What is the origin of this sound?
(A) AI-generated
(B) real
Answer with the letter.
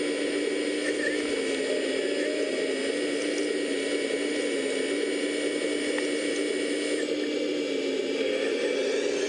B